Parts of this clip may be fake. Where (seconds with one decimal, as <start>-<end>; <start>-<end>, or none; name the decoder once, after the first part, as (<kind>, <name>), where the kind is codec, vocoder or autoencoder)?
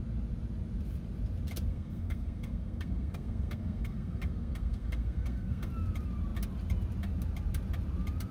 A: 1.7-5.7 (codec, SNAC)